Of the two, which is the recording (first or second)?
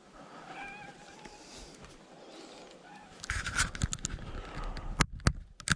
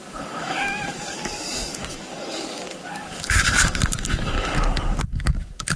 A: first